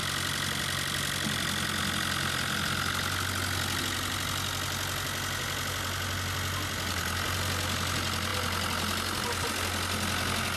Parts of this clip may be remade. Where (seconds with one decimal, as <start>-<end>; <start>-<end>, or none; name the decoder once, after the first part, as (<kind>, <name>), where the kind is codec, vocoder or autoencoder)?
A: none

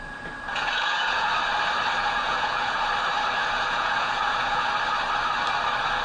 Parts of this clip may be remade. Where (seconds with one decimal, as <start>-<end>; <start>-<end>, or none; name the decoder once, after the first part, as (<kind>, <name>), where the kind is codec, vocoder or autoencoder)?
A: 0.5-1.3 (vocoder, Vocos); 2.0-2.8; 3.4-4.7